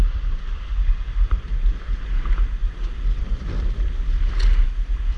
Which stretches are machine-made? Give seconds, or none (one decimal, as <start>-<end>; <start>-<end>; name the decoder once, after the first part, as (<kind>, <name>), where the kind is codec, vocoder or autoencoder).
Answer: none